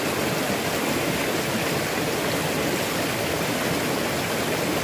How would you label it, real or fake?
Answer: real